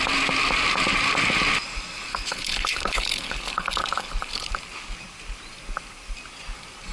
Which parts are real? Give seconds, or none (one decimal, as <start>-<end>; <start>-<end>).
0.0-2.1; 4.5-6.9